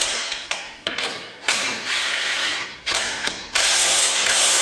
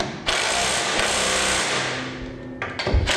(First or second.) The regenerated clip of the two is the first